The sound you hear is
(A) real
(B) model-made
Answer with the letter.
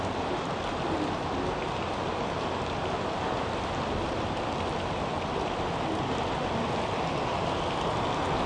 A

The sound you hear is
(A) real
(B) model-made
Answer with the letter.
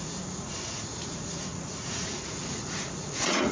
B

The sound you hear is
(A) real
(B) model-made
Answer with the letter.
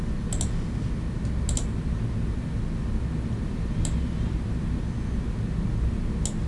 A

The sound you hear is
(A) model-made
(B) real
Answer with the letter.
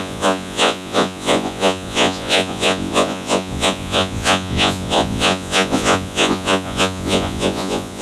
A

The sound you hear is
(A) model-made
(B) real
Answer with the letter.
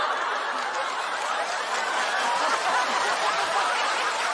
B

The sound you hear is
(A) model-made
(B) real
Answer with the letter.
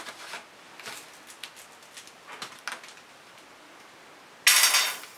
B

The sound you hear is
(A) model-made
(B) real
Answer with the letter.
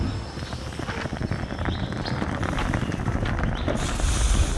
B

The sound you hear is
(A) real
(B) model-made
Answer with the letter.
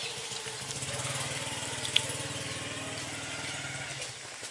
A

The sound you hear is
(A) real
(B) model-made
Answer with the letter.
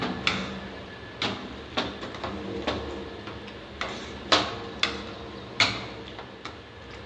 A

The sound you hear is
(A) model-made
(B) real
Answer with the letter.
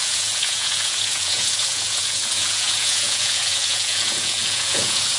A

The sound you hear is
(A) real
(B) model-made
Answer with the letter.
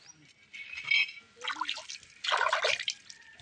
A